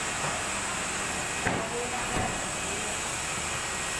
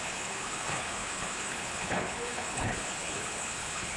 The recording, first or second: first